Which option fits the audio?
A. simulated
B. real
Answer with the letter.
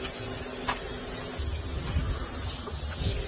B